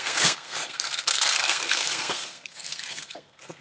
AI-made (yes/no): yes